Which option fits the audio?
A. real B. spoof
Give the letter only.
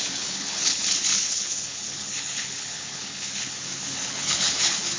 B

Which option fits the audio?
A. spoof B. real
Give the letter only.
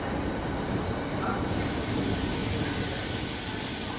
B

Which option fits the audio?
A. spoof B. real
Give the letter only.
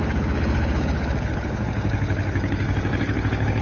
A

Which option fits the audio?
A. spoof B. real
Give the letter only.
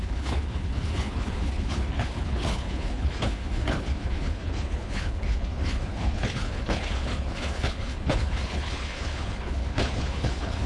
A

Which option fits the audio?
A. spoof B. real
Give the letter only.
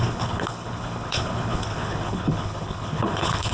A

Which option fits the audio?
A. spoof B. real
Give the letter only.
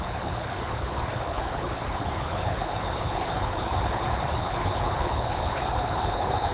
A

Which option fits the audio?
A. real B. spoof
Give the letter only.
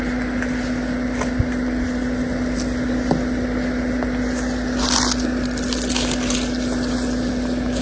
A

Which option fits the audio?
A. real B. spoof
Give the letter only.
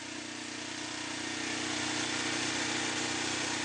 A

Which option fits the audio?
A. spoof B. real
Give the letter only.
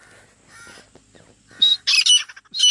B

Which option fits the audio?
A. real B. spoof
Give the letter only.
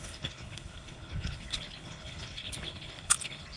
B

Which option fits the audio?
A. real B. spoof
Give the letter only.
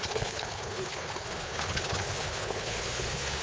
B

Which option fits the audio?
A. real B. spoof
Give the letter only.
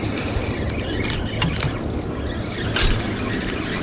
A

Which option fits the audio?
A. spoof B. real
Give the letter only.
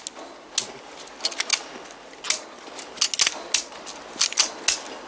B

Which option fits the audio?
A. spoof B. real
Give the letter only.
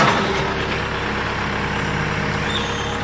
B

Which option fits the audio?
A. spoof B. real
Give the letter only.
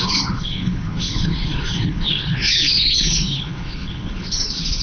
A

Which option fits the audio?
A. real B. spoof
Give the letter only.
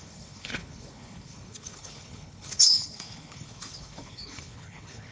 B